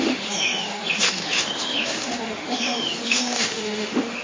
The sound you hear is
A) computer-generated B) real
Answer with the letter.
A